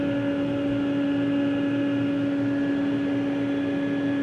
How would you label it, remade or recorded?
recorded